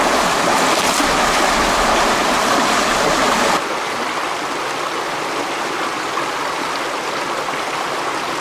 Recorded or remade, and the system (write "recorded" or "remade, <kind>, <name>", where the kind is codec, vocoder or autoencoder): recorded